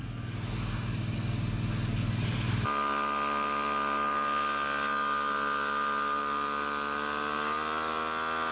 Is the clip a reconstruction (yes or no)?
no